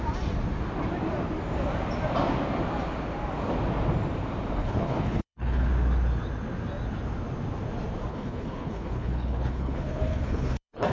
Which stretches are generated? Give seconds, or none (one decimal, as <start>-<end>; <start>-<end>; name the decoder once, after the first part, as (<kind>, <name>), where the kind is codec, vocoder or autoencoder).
4.6-5.7 (codec, HILCodec); 8.1-10.9